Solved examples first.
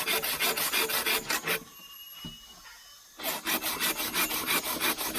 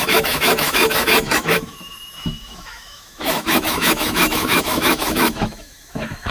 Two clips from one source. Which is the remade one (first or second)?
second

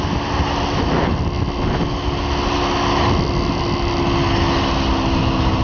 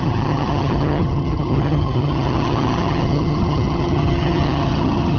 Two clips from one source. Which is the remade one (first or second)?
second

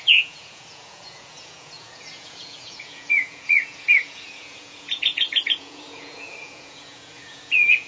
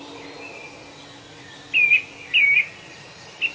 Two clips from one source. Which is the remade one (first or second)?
first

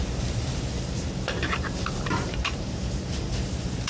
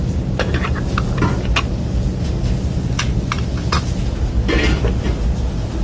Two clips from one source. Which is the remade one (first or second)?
first